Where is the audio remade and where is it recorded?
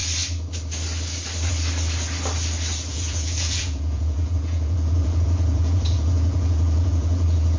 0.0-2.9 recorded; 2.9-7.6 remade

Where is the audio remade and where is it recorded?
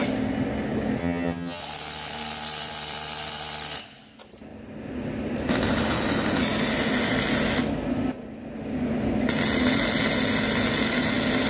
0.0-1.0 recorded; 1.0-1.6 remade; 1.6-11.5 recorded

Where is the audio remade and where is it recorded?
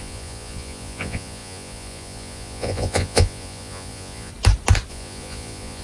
0.0-4.3 remade; 4.3-4.9 recorded; 4.9-5.8 remade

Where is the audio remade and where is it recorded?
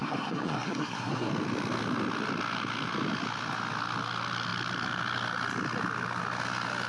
0.0-1.3 remade; 1.3-6.9 recorded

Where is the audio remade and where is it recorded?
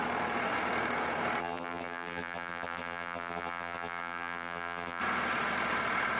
0.0-1.4 recorded; 1.4-5.0 remade; 5.0-6.2 recorded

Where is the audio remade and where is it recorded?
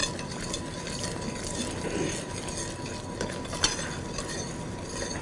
0.0-5.2 recorded